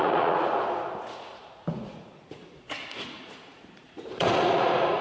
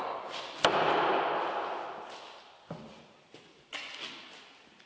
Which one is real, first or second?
second